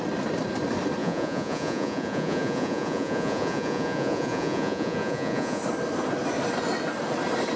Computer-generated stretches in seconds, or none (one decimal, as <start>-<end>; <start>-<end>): 1.0-5.6